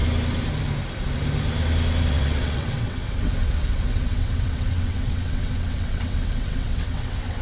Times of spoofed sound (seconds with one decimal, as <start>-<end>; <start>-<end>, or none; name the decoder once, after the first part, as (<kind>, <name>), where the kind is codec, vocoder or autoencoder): 2.1-7.4 (vocoder, WaveNeXt)